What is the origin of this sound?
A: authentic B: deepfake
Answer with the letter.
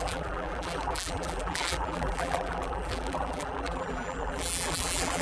B